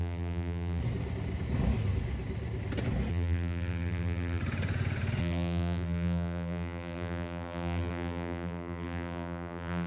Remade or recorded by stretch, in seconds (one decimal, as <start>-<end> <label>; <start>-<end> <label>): 0.0-0.8 remade; 0.8-3.1 recorded; 3.1-4.4 remade; 4.4-5.2 recorded; 5.2-9.9 remade